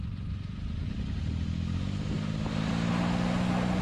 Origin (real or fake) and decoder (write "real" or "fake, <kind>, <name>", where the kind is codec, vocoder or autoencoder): real